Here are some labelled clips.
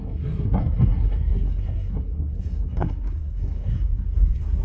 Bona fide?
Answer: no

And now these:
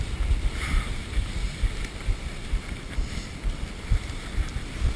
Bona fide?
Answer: yes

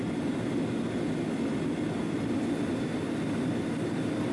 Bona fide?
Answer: yes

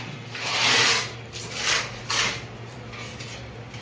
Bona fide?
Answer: yes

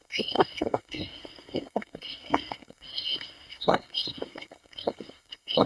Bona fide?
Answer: no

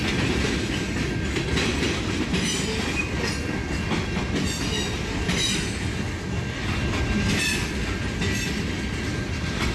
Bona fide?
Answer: yes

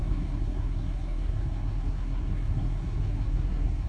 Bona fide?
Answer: no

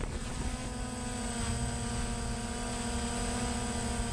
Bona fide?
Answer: yes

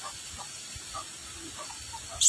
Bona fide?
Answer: yes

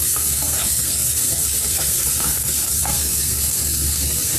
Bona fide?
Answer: no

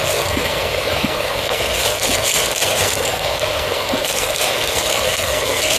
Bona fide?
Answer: no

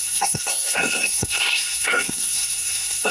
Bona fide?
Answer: no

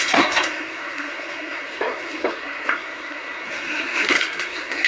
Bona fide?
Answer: no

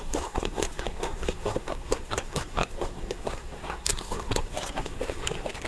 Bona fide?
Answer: no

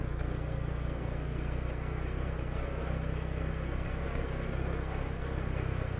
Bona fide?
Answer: no